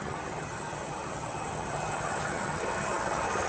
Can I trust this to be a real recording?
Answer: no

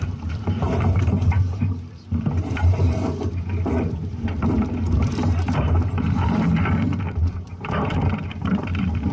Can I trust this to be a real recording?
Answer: no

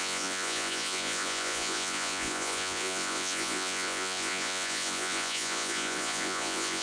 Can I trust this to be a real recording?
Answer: no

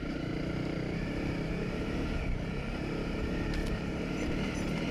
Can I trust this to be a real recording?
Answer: no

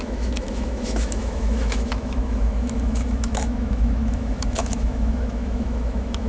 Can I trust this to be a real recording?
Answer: no